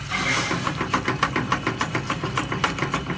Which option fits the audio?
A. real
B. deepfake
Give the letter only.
A